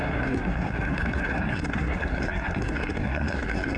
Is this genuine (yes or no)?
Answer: no